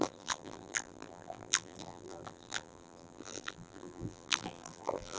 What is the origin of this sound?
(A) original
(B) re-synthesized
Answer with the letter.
B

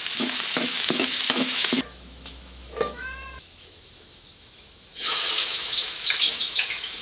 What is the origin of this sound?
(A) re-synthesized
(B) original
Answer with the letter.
A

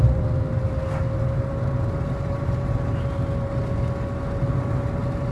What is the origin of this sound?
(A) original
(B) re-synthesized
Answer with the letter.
A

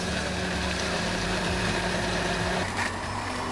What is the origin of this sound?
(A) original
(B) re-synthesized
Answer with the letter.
B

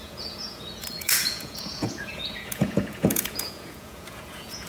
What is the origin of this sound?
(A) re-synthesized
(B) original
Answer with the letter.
A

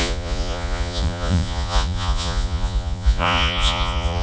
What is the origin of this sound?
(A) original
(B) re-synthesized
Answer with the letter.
B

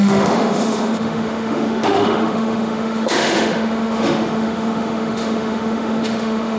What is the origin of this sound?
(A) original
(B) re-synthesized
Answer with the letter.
B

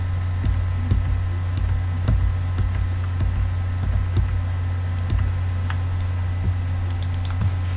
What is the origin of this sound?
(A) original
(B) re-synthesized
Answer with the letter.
A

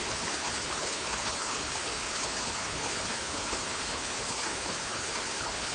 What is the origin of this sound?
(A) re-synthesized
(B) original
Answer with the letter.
A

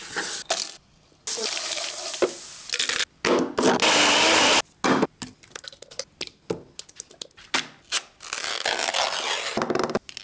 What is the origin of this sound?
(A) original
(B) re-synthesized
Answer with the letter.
A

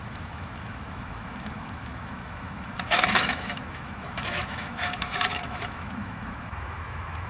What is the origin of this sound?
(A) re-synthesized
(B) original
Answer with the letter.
A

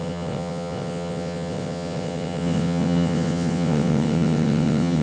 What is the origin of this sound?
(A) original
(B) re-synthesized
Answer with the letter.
B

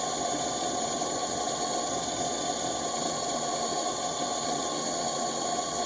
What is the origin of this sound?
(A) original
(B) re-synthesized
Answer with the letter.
B